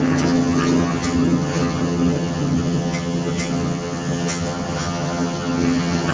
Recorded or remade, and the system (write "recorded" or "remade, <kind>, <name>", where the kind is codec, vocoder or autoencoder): remade, vocoder, HiFi-GAN